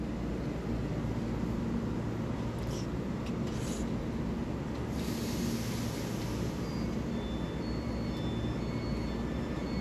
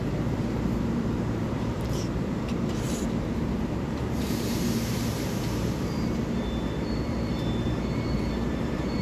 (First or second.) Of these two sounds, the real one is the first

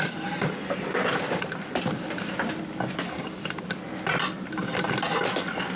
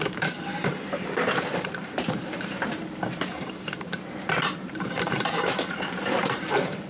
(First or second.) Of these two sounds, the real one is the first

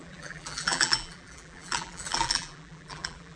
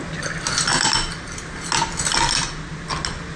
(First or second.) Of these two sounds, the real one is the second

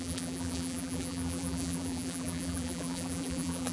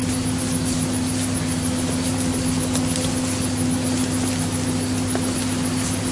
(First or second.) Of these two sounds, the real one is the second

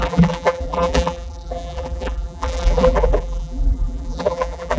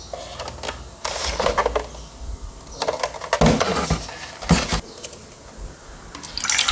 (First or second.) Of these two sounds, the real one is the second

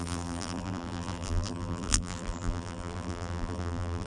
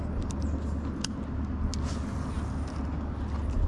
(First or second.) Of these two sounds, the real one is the second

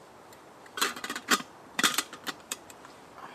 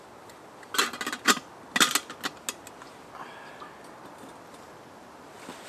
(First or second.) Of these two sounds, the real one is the second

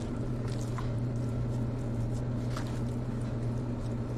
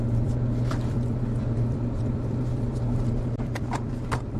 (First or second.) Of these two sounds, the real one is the first